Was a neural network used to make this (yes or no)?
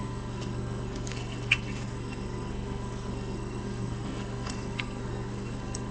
yes